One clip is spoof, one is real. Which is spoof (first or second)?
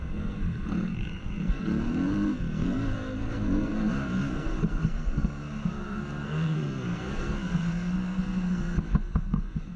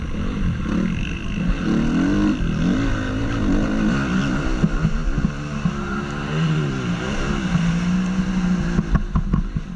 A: first